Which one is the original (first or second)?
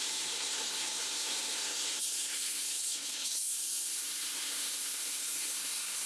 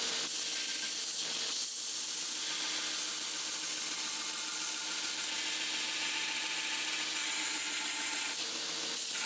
second